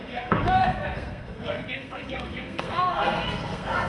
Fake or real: fake